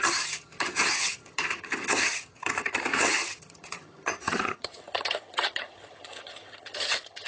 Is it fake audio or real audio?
fake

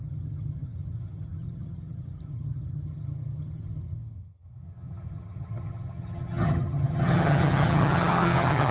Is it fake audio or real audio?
fake